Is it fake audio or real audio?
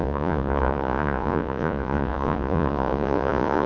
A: fake